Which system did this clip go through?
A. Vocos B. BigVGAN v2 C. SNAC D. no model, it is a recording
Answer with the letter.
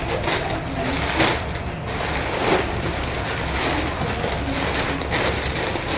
D